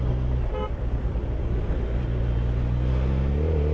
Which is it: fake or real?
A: real